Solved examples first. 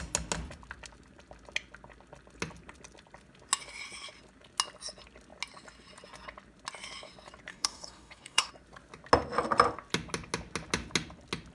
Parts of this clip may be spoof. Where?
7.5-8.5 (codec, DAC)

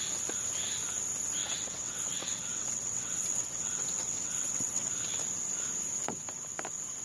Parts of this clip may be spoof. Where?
1.4-4.9 (vocoder, WaveNeXt)